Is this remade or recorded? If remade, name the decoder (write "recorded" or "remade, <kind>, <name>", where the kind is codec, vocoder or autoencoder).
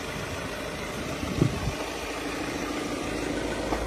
remade, vocoder, BigVGAN v2